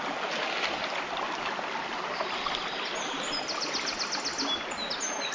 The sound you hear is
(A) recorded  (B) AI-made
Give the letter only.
A